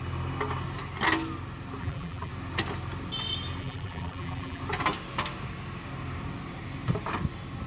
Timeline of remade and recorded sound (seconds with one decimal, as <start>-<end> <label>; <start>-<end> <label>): 0.0-1.8 recorded; 1.8-2.3 remade; 2.3-3.6 recorded; 3.6-4.6 remade; 4.6-7.7 recorded